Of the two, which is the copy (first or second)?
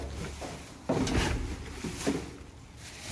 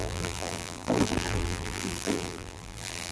second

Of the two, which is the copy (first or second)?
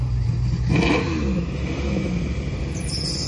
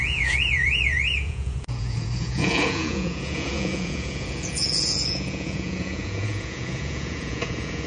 second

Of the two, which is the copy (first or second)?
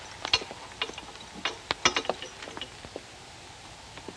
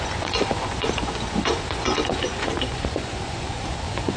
second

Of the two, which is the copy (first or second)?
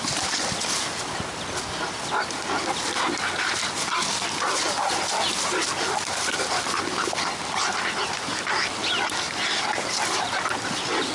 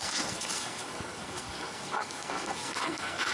second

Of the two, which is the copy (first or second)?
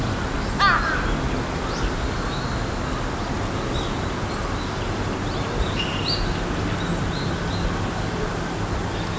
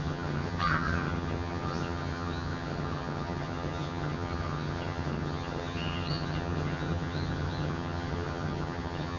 second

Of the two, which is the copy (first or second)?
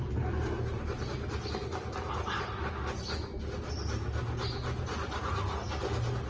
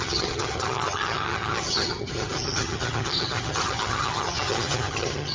second